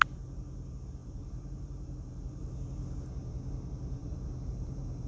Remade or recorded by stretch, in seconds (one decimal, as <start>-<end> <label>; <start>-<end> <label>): 0.0-1.0 recorded; 1.0-2.5 remade; 2.5-4.0 recorded; 4.0-5.1 remade